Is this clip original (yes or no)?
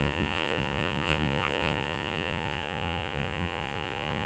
no